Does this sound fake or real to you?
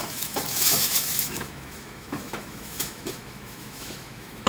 fake